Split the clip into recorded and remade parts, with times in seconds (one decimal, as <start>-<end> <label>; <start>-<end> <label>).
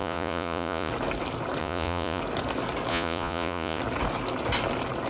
0.0-0.9 remade; 0.9-1.6 recorded; 1.6-2.2 remade; 2.2-2.9 recorded; 2.9-3.8 remade; 3.8-5.1 recorded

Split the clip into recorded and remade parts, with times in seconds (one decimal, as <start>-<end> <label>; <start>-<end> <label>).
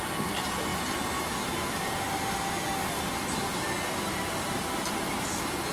0.0-5.7 recorded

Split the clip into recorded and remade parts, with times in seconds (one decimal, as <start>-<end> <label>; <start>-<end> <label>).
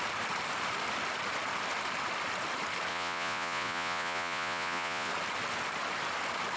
0.0-2.9 recorded; 2.9-5.1 remade; 5.1-6.6 recorded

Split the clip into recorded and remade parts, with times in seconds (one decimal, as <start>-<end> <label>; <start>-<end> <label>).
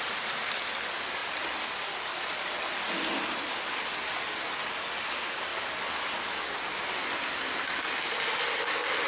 0.0-9.1 recorded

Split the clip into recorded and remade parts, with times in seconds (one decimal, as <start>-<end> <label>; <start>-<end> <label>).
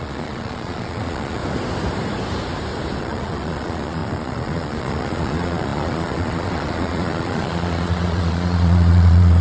0.0-1.4 remade; 1.4-3.0 recorded; 3.0-9.4 remade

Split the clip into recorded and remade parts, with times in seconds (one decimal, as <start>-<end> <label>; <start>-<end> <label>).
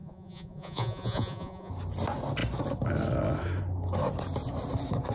0.0-1.7 remade; 1.7-5.1 recorded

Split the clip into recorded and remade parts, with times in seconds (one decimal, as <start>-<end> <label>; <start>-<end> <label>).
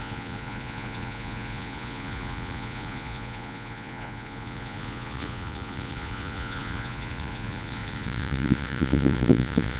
0.0-9.8 remade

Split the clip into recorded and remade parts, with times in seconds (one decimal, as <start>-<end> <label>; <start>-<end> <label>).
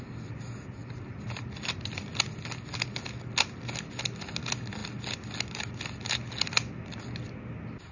0.0-7.9 recorded